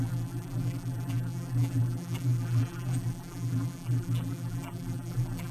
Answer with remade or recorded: remade